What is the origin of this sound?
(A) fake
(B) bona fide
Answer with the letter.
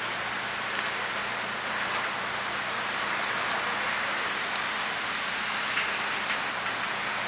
B